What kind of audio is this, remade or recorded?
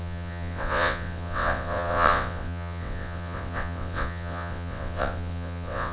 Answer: remade